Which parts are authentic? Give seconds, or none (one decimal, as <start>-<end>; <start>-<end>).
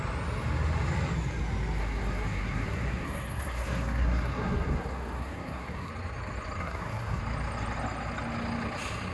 0.0-1.8; 5.9-6.6; 7.2-9.1